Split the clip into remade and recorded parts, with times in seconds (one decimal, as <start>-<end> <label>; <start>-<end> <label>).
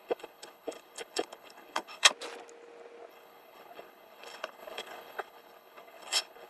0.0-2.1 remade; 2.1-3.1 recorded; 3.1-6.5 remade